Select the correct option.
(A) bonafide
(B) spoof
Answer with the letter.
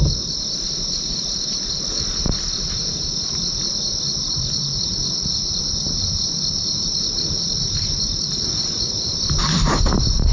A